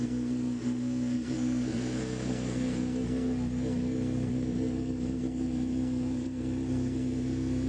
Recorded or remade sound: remade